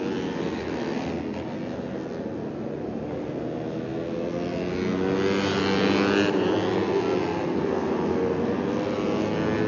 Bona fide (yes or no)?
yes